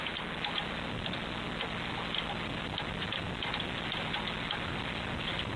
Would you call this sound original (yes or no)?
yes